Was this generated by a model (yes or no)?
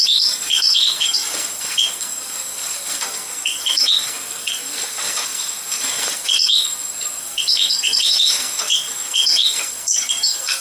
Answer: yes